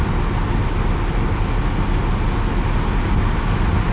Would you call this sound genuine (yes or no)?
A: yes